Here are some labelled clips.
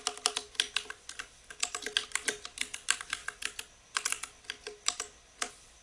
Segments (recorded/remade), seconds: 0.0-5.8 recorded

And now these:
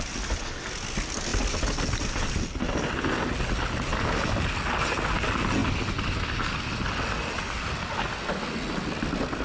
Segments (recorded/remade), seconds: 0.0-9.4 recorded

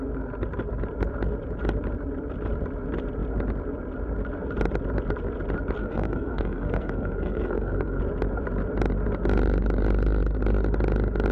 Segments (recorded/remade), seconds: 0.0-5.8 recorded; 5.8-8.0 remade; 8.0-11.3 recorded